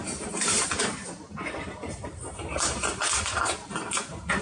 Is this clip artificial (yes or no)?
yes